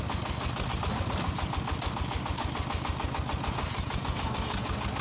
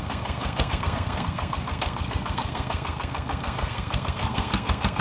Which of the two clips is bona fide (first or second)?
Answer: first